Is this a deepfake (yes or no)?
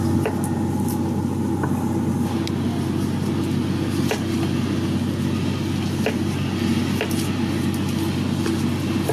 no